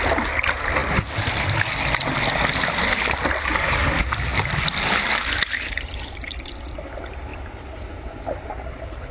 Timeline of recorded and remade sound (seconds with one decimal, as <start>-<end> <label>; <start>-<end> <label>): 0.0-9.1 recorded